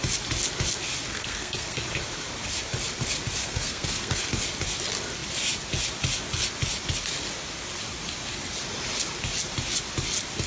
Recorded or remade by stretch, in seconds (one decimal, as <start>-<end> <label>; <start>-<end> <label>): 0.0-1.1 recorded; 1.1-1.8 remade; 1.8-3.4 recorded; 3.4-4.2 remade; 4.2-10.5 recorded